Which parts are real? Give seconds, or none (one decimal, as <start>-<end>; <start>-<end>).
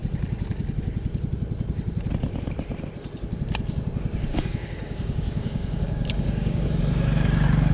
0.0-4.3; 6.8-7.7